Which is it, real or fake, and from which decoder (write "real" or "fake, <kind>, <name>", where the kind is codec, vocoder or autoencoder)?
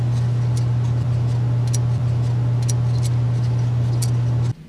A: real